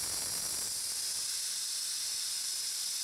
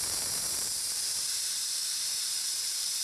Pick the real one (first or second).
first